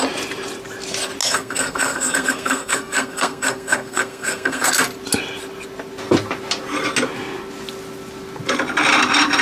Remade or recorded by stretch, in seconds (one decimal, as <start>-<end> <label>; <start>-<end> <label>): 0.0-1.2 recorded; 1.2-4.7 remade; 4.7-9.4 recorded